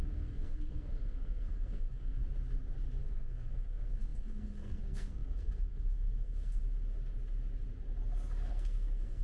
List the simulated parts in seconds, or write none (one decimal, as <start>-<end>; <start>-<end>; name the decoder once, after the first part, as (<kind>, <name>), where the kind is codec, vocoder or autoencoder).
0.0-2.2 (codec, SNAC); 3.0-6.6; 8.5-9.2